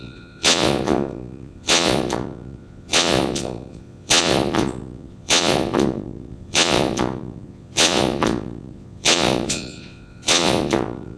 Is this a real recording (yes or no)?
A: no